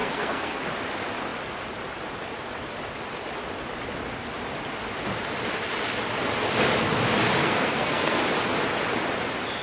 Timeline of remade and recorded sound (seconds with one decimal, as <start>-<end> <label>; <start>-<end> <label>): 0.0-0.6 remade; 0.6-7.4 recorded; 7.4-8.2 remade; 8.2-9.6 recorded